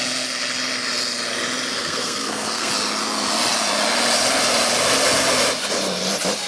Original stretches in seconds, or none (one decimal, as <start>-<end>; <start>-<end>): 0.0-1.8; 2.7-6.5